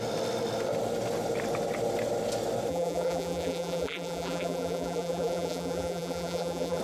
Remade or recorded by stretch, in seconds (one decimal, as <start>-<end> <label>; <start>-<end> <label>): 0.0-2.7 recorded; 2.7-6.8 remade